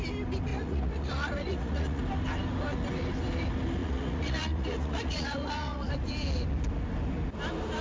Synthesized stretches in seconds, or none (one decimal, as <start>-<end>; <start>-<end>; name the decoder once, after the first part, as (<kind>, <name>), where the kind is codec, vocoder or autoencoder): 0.5-2.0 (vocoder, Vocos); 3.8-5.9